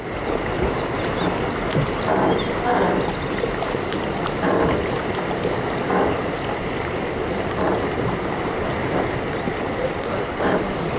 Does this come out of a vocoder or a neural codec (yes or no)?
no